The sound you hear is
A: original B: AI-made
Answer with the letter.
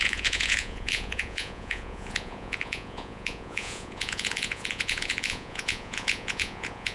B